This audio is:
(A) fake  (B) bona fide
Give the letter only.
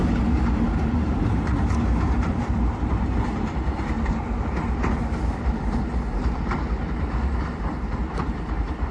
A